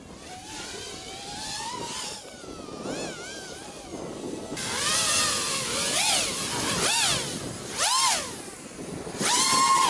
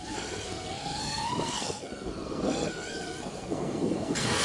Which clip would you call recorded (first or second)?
first